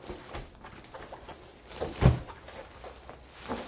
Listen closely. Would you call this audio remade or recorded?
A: recorded